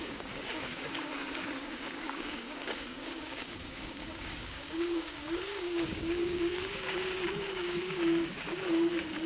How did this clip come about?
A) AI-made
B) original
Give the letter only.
A